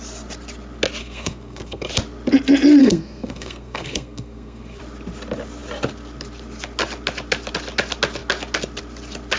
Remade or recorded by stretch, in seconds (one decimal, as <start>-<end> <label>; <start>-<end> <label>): 0.0-1.0 recorded; 1.0-1.9 remade; 1.9-2.8 recorded; 2.8-4.8 remade; 4.8-9.4 recorded